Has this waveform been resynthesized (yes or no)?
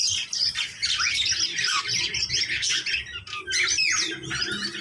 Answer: no